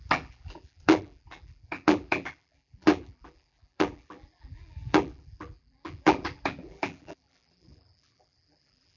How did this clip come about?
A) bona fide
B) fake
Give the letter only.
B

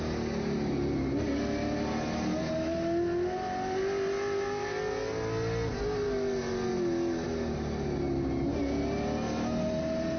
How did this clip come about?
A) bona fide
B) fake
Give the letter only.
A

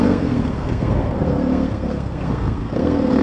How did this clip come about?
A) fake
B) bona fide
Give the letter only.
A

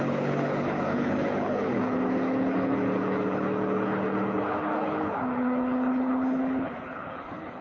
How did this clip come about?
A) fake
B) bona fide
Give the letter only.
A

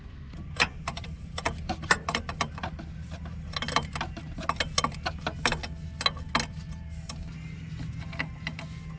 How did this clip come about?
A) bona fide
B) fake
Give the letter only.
A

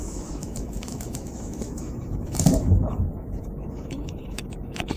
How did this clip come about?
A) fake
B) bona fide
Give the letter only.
A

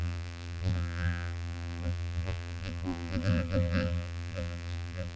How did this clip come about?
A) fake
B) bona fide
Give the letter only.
A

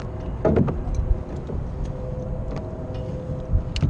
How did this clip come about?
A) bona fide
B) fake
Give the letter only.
A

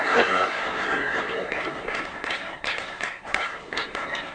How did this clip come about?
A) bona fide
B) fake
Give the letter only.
B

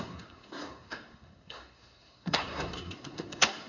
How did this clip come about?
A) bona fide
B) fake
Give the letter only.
B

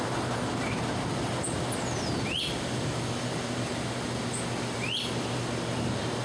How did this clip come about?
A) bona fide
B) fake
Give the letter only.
A